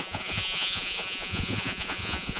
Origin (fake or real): fake